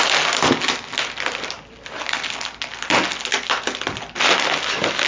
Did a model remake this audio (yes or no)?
no